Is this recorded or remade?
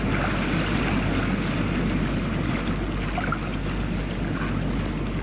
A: recorded